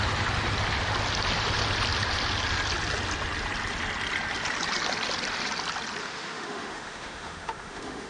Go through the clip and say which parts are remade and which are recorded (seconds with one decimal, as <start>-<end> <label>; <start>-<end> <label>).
0.0-6.0 recorded; 6.0-8.1 remade